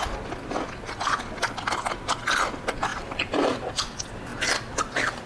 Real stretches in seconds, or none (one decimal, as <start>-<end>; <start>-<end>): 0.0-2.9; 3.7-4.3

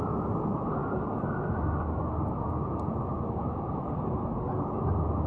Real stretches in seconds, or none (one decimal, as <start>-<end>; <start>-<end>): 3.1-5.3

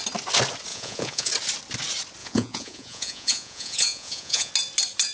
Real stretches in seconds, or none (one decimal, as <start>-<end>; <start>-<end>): 0.0-0.7; 1.3-2.2; 4.5-5.1

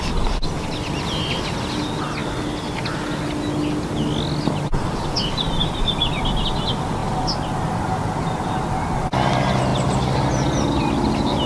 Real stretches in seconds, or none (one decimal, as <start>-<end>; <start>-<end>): 0.0-11.5

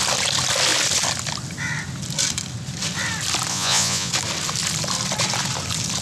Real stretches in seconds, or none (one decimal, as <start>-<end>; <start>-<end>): 0.0-3.5; 4.1-6.0

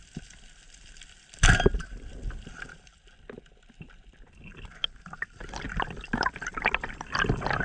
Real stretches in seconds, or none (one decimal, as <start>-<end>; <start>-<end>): 0.0-7.6

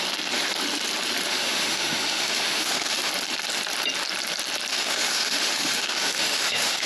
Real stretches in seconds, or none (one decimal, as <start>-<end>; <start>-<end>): 0.0-1.3; 3.1-4.7

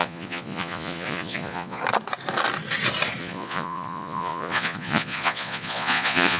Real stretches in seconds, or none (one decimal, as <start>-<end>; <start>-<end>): 1.8-3.2